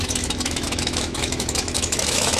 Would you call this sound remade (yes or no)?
yes